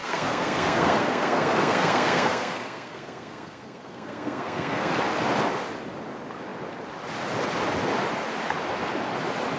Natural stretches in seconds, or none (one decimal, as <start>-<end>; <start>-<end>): 4.9-9.6